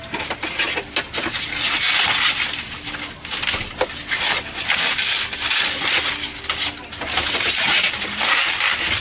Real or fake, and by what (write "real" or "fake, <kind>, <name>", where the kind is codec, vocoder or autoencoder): real